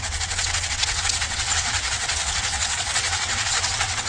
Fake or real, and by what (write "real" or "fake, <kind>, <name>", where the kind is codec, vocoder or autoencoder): fake, vocoder, WaveNeXt